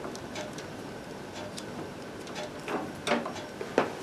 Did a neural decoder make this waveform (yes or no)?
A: no